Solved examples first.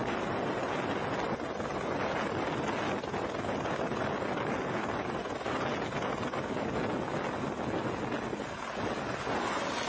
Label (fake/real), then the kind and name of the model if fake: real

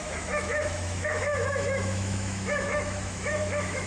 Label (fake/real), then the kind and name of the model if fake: fake, autoencoder, DAC-VAE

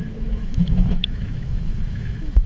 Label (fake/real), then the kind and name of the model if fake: fake, autoencoder, DAC-VAE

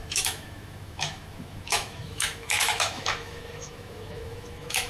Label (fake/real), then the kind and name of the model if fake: fake, autoencoder, DAC-VAE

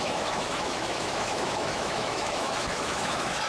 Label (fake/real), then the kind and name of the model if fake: fake, autoencoder, DAC-VAE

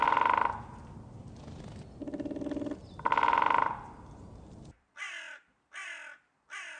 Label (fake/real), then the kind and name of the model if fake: real